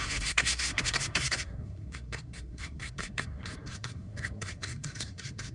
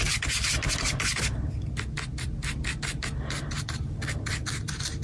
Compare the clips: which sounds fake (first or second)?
first